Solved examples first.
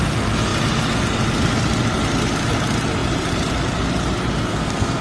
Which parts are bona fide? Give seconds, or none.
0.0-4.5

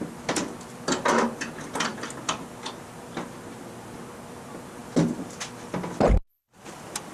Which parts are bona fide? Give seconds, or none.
0.0-7.1

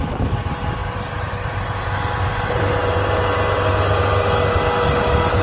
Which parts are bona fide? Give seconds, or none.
0.0-5.4

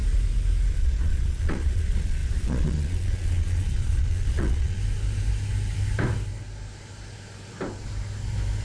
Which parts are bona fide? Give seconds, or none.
0.0-0.7; 4.8-8.6

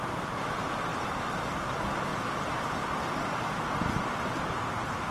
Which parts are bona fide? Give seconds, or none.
2.1-2.6

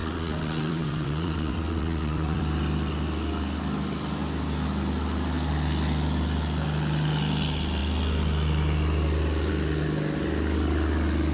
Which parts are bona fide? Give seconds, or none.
2.4-11.3

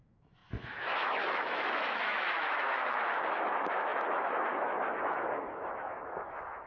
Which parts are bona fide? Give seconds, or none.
none